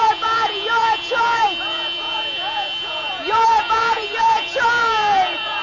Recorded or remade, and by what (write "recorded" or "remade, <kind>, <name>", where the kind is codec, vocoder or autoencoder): remade, vocoder, Vocos